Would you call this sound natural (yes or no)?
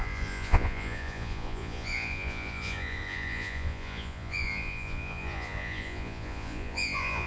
no